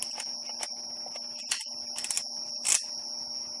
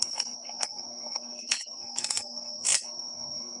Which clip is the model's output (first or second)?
second